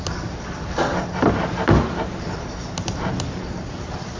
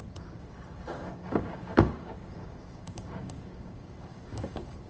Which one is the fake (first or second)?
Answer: second